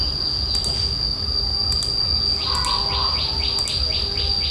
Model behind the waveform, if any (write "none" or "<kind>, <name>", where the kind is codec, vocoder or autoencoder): none